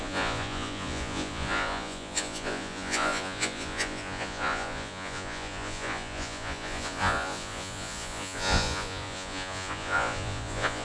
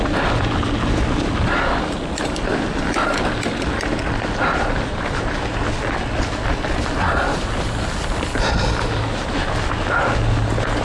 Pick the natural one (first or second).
second